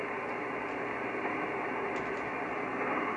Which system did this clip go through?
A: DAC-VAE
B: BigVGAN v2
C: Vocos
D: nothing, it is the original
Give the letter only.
D